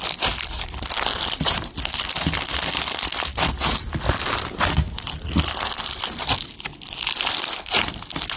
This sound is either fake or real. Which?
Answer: real